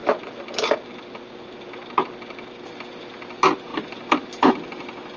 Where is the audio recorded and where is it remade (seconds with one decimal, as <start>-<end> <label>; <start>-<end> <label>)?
0.0-5.2 recorded

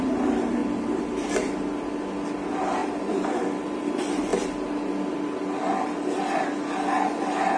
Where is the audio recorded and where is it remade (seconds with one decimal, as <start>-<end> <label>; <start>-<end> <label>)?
0.0-2.8 recorded; 2.8-3.8 remade; 3.8-7.6 recorded

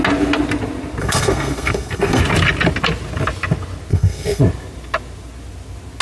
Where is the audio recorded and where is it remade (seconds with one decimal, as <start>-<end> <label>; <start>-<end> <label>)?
0.0-1.0 recorded; 1.0-2.2 remade; 2.2-3.9 recorded; 3.9-4.4 remade; 4.4-6.0 recorded

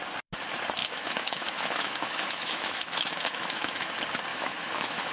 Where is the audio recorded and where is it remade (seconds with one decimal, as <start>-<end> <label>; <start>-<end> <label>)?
0.0-0.8 recorded; 0.8-3.9 remade; 3.9-4.3 recorded; 4.3-5.1 remade

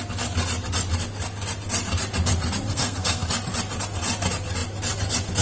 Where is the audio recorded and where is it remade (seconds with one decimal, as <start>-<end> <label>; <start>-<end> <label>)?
0.0-2.7 recorded; 2.7-3.3 remade; 3.3-5.4 recorded

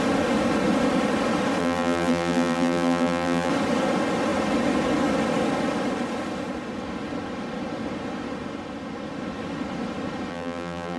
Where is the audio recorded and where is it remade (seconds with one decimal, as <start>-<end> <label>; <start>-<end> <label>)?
0.0-1.6 recorded; 1.6-3.5 remade; 3.5-10.3 recorded; 10.3-11.0 remade

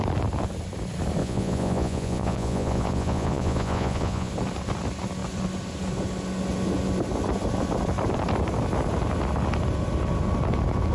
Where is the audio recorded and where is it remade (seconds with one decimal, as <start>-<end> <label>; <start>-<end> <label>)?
0.0-1.2 recorded; 1.2-4.3 remade; 4.3-10.9 recorded